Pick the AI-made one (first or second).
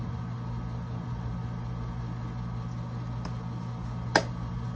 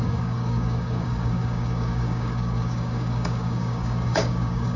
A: second